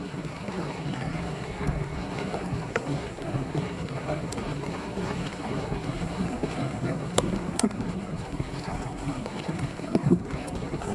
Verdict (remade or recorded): remade